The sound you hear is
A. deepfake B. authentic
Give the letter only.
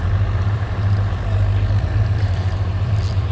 A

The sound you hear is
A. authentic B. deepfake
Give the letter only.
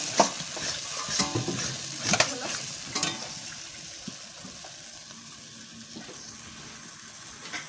A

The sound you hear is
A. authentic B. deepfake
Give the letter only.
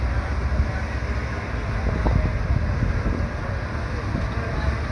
A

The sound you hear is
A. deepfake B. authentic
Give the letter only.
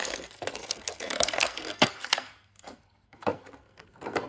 A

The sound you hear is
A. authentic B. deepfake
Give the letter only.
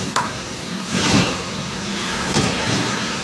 B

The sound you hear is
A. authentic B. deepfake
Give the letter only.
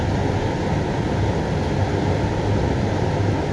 A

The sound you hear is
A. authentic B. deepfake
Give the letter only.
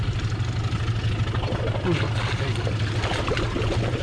A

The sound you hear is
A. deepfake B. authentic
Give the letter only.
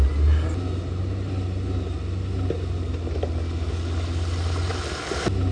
B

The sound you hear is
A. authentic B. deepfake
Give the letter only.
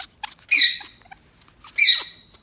A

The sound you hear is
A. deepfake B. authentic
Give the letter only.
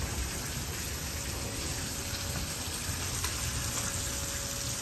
B